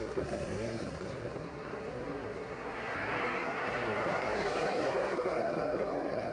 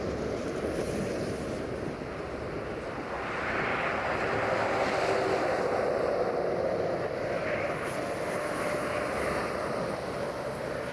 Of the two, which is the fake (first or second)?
first